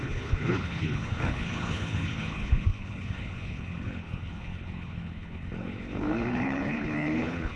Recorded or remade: remade